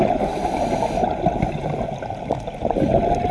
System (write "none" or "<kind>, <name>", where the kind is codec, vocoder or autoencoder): none